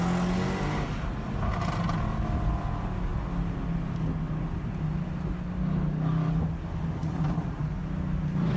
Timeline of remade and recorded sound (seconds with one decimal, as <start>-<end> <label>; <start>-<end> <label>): 0.0-8.6 recorded